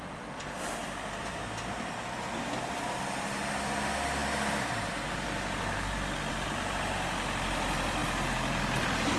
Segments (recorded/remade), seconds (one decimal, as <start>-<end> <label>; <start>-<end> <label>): 0.0-9.2 recorded